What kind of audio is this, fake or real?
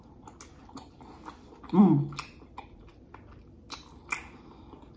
real